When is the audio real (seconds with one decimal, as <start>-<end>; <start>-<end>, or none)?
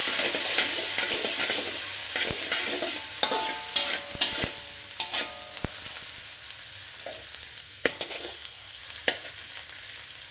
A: 0.0-7.6; 8.8-10.3